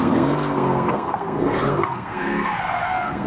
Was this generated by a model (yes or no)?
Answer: yes